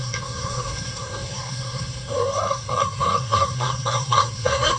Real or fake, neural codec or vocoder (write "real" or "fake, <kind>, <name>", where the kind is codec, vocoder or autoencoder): fake, codec, SNAC